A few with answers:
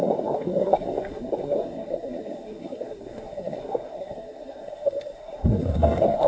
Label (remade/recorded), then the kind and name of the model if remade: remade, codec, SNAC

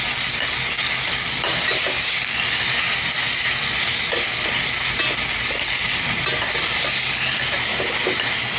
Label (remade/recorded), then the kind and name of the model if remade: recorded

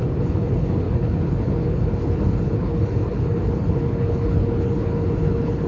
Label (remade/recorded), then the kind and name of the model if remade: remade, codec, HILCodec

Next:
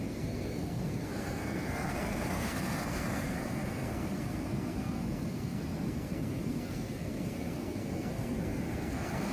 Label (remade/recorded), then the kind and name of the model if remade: remade, codec, SNAC